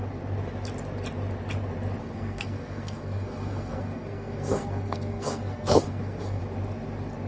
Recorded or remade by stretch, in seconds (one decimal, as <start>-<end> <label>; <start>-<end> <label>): 0.0-2.0 recorded; 2.0-6.4 remade; 6.4-7.3 recorded